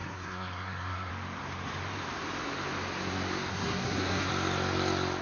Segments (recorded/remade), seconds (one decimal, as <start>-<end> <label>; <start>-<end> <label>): 0.0-1.1 remade; 1.1-3.5 recorded; 3.5-4.3 remade; 4.3-5.2 recorded